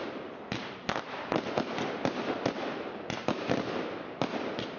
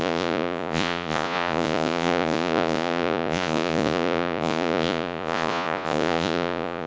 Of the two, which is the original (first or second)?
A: first